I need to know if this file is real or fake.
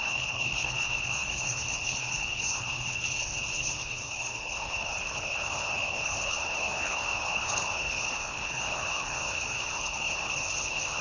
fake